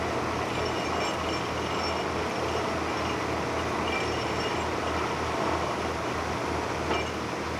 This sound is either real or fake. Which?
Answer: real